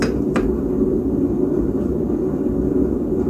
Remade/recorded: recorded